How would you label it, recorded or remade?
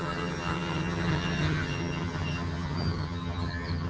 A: remade